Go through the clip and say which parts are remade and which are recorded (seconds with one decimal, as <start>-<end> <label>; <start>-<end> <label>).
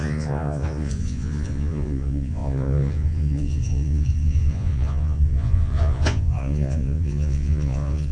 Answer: 0.0-8.1 remade